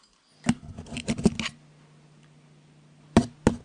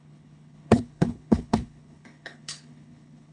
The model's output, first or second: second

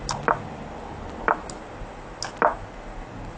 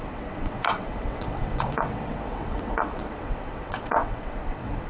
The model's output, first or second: second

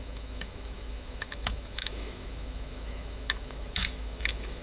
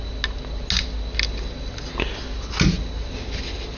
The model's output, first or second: first